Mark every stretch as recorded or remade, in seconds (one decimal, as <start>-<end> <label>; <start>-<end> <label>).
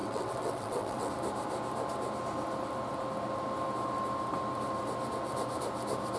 0.0-1.1 remade; 1.1-6.2 recorded